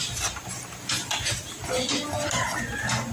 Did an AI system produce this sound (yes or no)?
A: no